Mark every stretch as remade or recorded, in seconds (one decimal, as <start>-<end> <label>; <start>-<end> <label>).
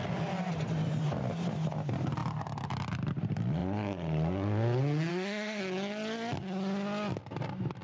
0.0-5.1 recorded; 5.1-5.6 remade; 5.6-7.8 recorded